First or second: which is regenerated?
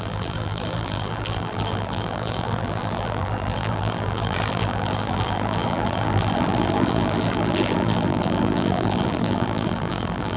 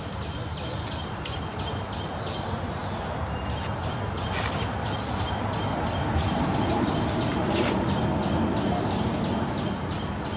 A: first